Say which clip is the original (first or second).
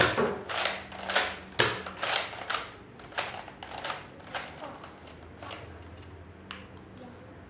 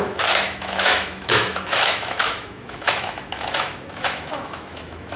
first